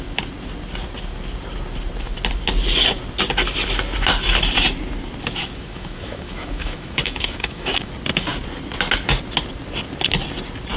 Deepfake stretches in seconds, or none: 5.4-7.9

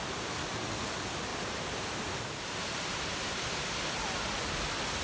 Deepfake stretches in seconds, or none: 1.3-3.5